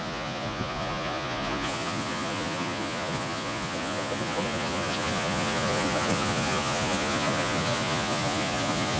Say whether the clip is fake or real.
fake